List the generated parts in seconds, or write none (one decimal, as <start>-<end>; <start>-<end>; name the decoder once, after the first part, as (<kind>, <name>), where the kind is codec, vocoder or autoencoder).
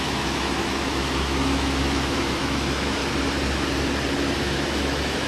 0.0-3.0 (autoencoder, DAC-VAE); 4.4-5.3